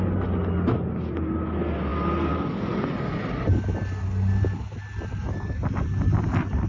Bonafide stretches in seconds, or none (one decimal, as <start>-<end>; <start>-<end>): 0.0-6.7